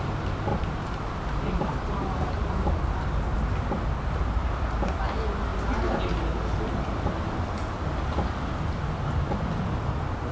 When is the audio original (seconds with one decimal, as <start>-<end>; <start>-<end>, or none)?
0.0-0.5; 2.9-10.3